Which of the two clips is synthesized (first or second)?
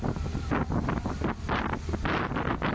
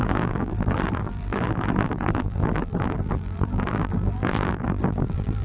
second